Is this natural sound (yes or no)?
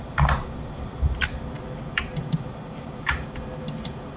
no